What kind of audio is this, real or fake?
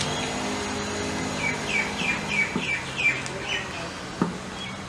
real